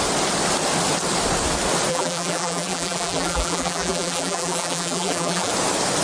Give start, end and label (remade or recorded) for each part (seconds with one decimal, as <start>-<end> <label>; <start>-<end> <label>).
0.0-1.9 recorded; 1.9-5.5 remade; 5.5-6.0 recorded